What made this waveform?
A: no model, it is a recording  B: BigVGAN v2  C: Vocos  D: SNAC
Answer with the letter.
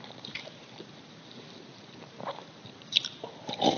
B